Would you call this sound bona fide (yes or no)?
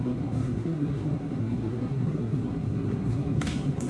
no